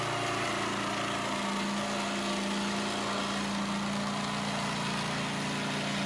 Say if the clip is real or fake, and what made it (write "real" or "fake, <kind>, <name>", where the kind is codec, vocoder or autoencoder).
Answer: real